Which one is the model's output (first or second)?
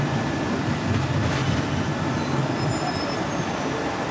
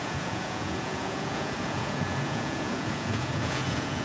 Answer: second